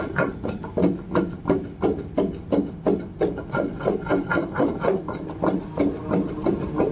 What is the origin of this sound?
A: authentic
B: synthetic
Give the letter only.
A